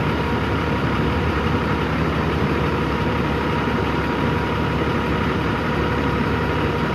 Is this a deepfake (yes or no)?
yes